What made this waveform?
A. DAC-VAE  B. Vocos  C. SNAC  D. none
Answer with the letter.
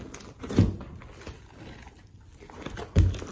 D